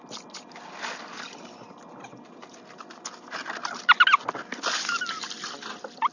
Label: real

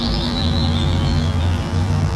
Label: fake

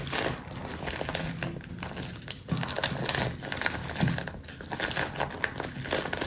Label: real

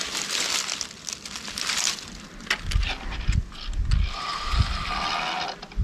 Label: real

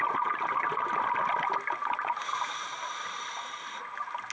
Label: real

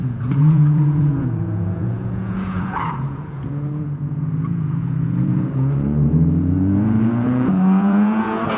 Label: fake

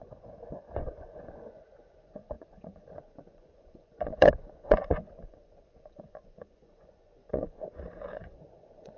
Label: fake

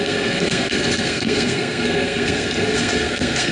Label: fake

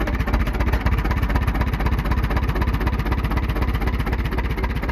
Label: real